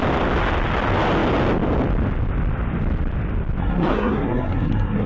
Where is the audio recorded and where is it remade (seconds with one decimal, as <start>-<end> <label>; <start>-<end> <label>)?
0.0-3.6 recorded; 3.6-5.1 remade